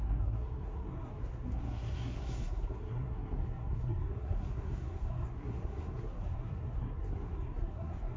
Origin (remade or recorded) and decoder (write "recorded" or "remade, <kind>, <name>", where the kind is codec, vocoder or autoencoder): remade, codec, SNAC